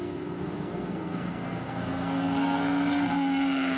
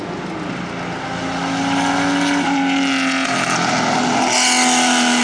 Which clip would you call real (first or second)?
second